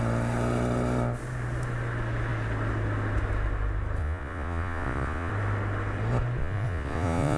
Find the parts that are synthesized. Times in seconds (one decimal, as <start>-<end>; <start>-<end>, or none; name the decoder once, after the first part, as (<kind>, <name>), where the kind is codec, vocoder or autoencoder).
4.0-5.3 (vocoder, Vocos); 6.4-7.4

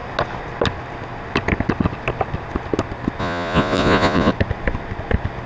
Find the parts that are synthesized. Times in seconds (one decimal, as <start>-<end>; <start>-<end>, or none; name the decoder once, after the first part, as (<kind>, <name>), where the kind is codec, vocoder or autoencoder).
3.2-4.3 (vocoder, Vocos)

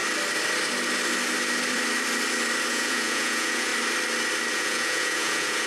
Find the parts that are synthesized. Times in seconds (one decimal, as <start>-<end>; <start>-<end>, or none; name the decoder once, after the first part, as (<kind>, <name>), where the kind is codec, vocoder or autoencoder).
2.7-3.7 (vocoder, Vocos); 4.5-5.7

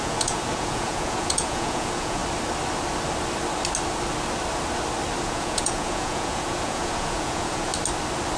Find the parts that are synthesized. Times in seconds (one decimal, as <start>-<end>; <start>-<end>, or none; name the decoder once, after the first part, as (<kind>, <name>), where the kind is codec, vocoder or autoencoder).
0.0-2.2 (vocoder, Vocos); 5.2-7.7

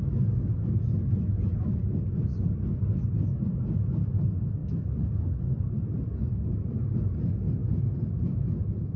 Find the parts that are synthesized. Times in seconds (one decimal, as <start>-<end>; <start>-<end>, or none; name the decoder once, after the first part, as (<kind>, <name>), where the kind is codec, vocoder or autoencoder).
7.6-9.0 (vocoder, Vocos)

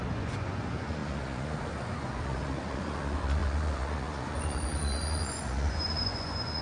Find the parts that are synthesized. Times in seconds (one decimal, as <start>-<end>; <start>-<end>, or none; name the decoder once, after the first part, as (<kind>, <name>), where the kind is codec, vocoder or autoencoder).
0.0-6.6 (vocoder, Vocos)

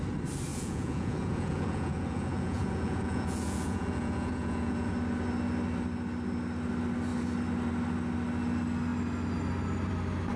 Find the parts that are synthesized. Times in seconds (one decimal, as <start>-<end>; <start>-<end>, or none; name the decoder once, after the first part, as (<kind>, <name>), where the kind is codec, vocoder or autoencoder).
0.5-4.9 (vocoder, Vocos)

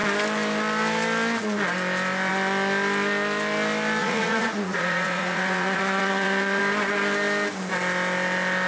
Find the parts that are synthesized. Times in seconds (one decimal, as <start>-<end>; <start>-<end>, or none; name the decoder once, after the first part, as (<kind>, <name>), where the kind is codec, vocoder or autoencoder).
4.0-6.6 (vocoder, Vocos)